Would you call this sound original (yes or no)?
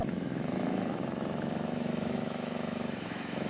no